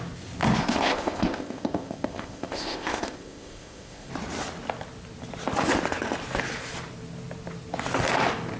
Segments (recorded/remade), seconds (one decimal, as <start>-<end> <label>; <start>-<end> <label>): 0.0-0.6 recorded; 0.6-4.1 remade; 4.1-8.6 recorded